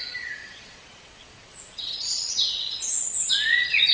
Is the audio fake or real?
fake